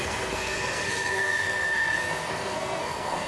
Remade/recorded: remade